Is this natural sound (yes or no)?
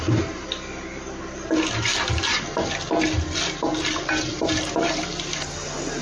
yes